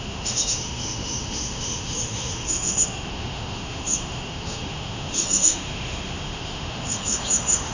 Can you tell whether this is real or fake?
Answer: fake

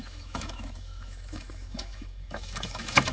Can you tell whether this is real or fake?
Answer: fake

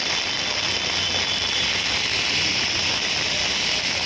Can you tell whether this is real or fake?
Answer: real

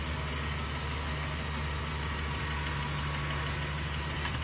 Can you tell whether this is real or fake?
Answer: real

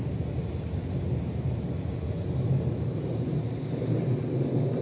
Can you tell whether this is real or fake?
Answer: real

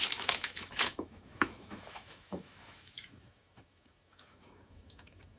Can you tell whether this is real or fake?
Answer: fake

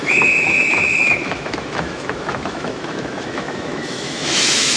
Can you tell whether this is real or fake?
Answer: fake